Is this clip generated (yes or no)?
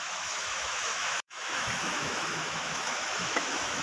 yes